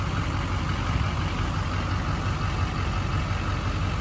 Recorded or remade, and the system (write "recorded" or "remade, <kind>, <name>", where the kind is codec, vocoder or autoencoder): recorded